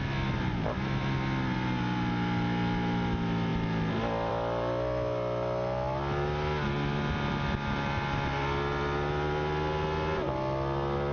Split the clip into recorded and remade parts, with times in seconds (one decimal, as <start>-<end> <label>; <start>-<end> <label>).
0.0-11.1 recorded